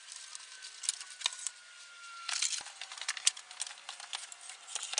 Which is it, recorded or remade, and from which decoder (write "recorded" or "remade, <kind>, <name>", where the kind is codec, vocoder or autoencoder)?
recorded